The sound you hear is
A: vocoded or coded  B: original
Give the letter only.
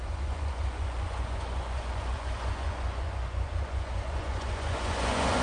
A